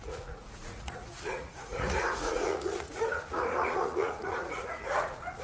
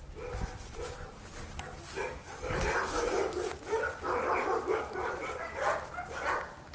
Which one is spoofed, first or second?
first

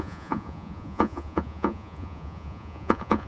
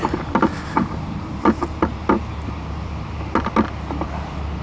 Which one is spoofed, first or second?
first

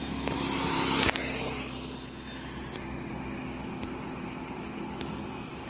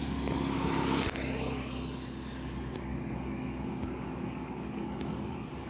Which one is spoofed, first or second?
second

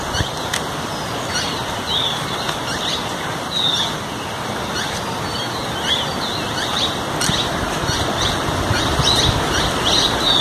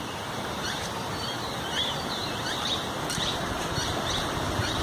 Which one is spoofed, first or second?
second